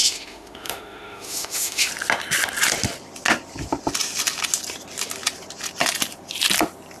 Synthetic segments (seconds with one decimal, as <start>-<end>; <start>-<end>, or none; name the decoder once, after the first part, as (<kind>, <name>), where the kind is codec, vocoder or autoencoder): 0.0-1.9 (autoencoder, DAC-VAE)